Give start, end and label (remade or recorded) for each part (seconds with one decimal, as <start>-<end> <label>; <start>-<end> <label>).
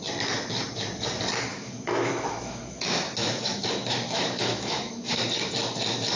0.0-1.5 recorded; 1.5-5.2 remade; 5.2-6.2 recorded